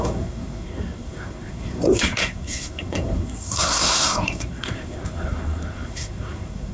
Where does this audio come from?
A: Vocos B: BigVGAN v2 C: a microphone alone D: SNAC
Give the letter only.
D